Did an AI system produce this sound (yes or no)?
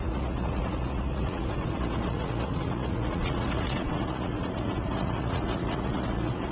yes